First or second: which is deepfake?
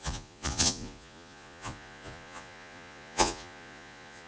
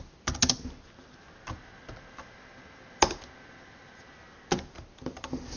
first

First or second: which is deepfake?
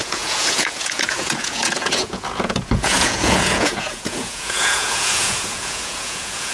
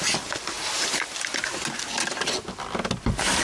first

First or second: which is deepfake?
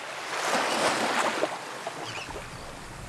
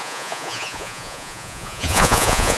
second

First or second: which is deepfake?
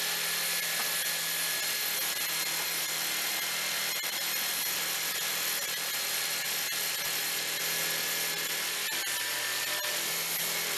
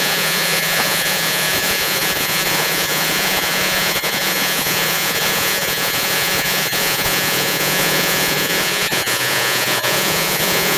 second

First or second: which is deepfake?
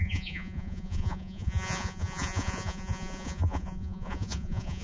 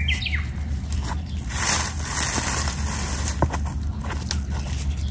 first